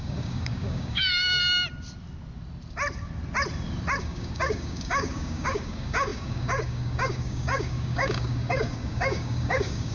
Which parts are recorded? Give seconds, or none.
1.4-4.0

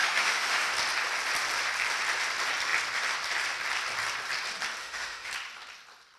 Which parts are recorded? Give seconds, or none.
0.7-4.8; 5.3-6.2

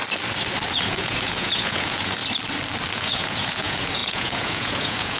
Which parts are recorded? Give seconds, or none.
0.0-0.7; 2.2-2.9

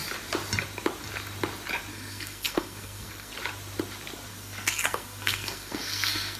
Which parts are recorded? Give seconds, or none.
0.0-1.9; 3.3-4.3

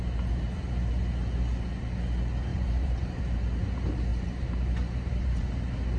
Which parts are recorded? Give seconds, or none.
0.0-2.5; 3.2-4.1; 5.5-6.0

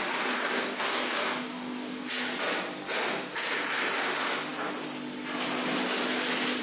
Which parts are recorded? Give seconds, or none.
0.0-0.5; 2.0-6.6

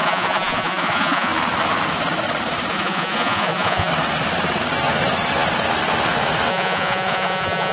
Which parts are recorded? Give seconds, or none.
1.3-2.7; 3.9-6.5